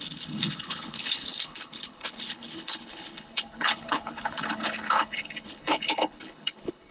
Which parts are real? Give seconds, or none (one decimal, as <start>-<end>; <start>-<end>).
none